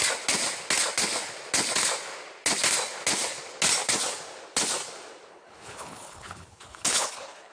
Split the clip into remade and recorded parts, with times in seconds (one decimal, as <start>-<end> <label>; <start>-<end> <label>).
0.0-5.3 recorded; 5.3-7.5 remade